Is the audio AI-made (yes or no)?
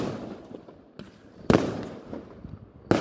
no